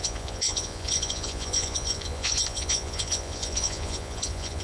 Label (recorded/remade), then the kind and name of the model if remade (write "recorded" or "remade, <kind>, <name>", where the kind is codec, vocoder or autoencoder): remade, vocoder, Vocos